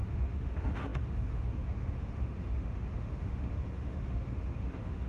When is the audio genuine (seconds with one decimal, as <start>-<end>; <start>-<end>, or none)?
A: none